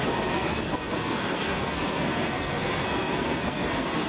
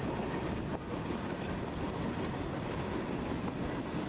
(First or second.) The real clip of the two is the second